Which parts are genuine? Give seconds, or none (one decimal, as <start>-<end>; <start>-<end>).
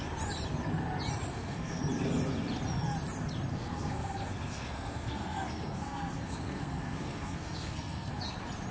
0.0-1.3; 1.8-3.5; 8.1-8.7